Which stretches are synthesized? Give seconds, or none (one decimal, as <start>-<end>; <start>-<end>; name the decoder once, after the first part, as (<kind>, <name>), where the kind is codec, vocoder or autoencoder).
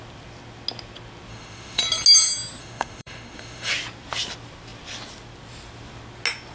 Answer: 1.3-1.8 (autoencoder, DAC-VAE); 2.6-3.7